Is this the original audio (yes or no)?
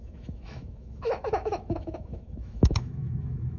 no